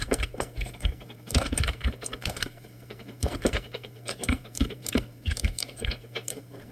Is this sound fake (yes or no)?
yes